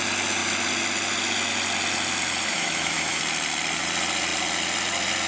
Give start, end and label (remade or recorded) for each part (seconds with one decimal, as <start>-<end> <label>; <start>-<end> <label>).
0.0-2.5 recorded; 2.5-3.2 remade; 3.2-5.3 recorded